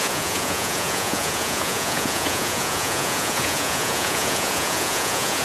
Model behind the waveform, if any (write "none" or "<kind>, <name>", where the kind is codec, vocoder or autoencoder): vocoder, Vocos